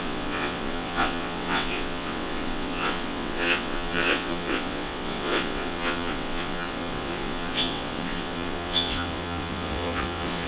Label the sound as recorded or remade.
remade